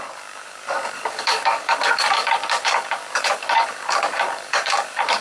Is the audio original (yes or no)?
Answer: no